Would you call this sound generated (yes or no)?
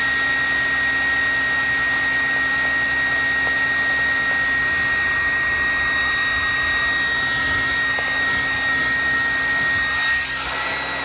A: no